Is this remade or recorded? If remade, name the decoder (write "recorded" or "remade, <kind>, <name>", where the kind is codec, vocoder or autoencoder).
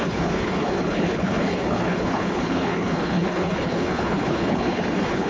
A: remade, codec, HILCodec